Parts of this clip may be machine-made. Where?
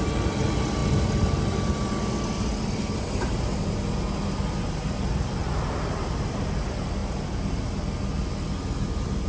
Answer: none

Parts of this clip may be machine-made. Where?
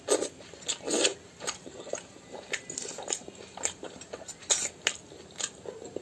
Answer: 1.1-4.7 (vocoder, BigVGAN v2)